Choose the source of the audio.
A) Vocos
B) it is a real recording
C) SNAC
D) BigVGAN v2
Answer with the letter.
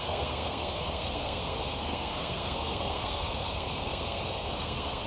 C